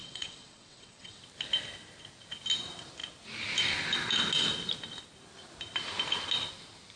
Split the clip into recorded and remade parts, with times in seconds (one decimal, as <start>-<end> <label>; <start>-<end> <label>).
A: 0.0-1.2 remade; 1.2-7.0 recorded